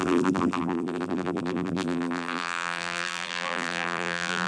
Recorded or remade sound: remade